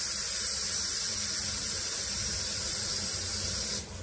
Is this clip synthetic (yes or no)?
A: no